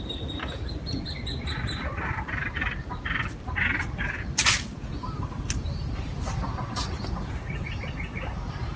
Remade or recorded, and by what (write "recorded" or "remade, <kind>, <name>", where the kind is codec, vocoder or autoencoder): remade, vocoder, BigVGAN v2